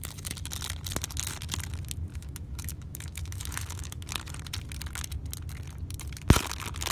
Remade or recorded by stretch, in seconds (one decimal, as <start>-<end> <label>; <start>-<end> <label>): 0.0-2.1 recorded; 2.1-4.1 remade; 4.1-6.9 recorded